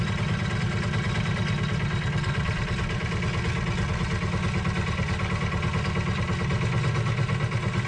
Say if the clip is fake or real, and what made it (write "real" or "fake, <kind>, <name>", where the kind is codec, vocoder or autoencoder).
real